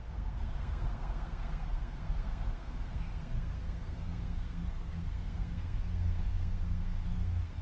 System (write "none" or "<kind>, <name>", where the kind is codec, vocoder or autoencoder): codec, SNAC